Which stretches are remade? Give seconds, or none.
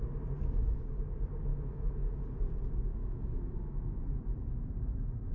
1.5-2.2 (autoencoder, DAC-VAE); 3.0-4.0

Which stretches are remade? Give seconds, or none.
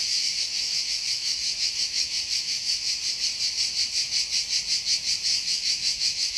0.0-3.0 (autoencoder, DAC-VAE); 5.3-6.4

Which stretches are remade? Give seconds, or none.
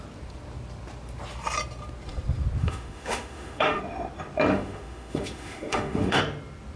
2.6-3.8 (autoencoder, DAC-VAE); 4.5-6.2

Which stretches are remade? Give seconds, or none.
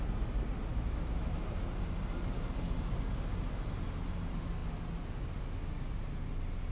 0.7-1.4 (autoencoder, DAC-VAE)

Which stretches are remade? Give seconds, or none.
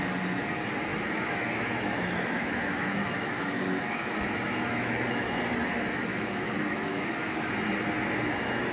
0.9-5.4 (autoencoder, DAC-VAE); 6.1-7.5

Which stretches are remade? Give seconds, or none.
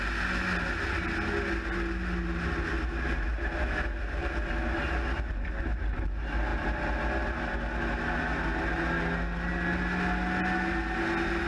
none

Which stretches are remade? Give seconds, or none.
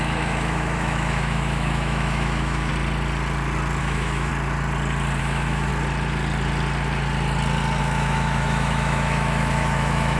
0.0-2.7 (autoencoder, DAC-VAE); 3.8-4.3; 5.2-5.7; 7.8-10.2